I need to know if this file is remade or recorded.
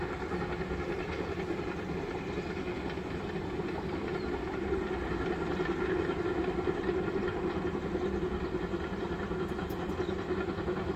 recorded